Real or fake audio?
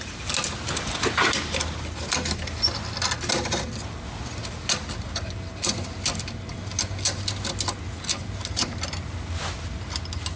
real